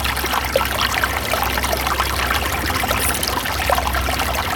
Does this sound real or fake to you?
real